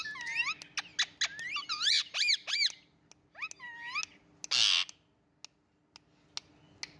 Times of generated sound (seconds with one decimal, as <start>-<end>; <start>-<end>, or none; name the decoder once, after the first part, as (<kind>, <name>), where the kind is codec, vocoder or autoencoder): none